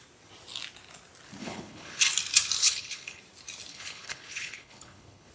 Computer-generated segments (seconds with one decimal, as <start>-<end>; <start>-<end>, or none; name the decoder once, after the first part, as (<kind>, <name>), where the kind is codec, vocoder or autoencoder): 1.4-2.0 (codec, HILCodec); 2.6-3.2; 3.7-5.3

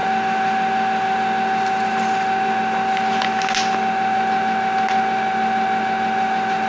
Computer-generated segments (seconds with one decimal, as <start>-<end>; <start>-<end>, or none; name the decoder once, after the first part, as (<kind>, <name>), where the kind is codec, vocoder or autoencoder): none

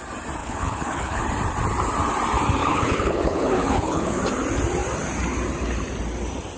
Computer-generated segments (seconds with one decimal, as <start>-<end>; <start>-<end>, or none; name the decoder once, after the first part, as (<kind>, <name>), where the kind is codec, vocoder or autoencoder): 0.4-1.2 (codec, HILCodec); 2.6-4.2